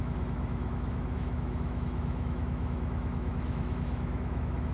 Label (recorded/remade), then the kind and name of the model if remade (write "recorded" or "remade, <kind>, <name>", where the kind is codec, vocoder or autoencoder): remade, autoencoder, DAC-VAE